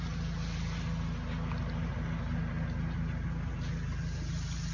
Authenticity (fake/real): real